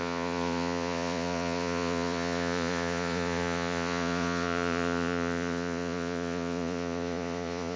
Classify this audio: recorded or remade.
remade